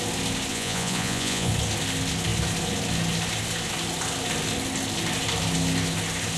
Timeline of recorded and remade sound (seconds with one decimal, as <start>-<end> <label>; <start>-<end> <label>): 0.0-0.5 recorded; 0.5-1.5 remade; 1.5-6.4 recorded